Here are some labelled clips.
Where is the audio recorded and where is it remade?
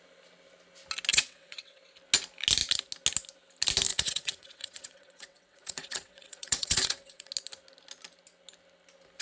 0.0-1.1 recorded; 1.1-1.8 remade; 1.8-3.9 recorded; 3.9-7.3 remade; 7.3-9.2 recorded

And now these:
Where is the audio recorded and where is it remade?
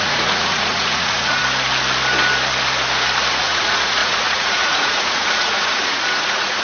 0.0-1.4 remade; 1.4-3.4 recorded; 3.4-6.6 remade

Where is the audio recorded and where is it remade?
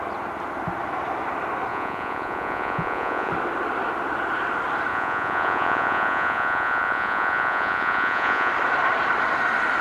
0.0-1.7 recorded; 1.7-3.3 remade; 3.3-4.9 recorded; 4.9-8.5 remade; 8.5-9.8 recorded